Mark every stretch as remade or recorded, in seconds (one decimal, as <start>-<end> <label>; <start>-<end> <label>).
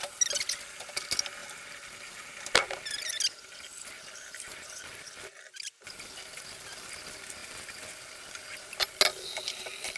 0.0-7.4 recorded; 7.4-8.6 remade; 8.6-10.0 recorded